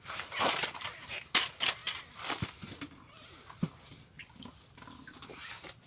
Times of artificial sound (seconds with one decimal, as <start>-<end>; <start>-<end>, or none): 0.0-1.8; 5.3-5.9